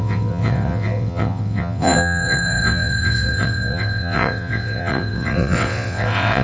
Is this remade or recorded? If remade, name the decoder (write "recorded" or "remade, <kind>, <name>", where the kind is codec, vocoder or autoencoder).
remade, vocoder, WaveNeXt